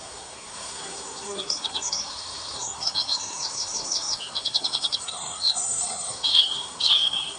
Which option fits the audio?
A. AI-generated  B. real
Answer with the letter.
A